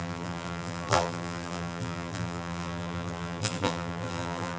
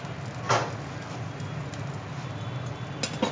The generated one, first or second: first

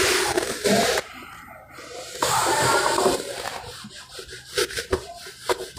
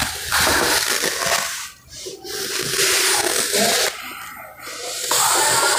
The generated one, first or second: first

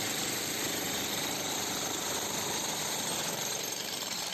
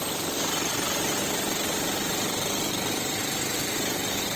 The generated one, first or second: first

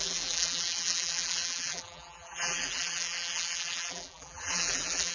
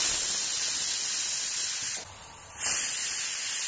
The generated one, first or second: first